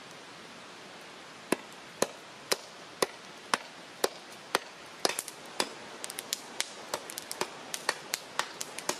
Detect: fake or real real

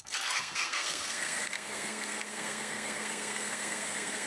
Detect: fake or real fake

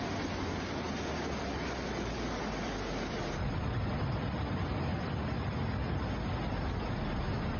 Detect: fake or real real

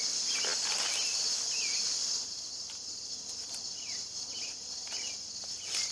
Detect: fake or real real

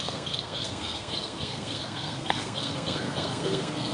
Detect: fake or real fake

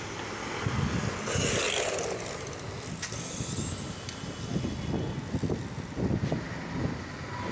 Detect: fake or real real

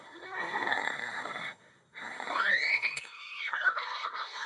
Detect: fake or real fake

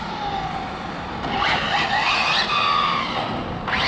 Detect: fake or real real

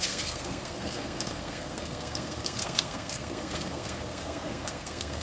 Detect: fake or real fake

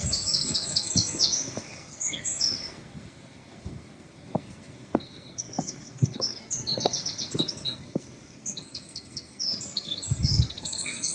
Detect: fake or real fake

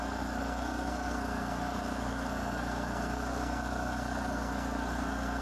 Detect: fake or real fake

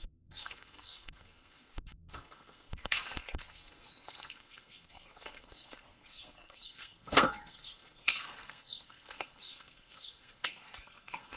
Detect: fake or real fake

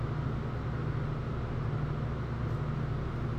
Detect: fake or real real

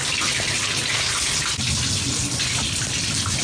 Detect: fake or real real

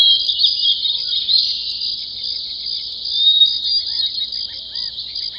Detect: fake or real real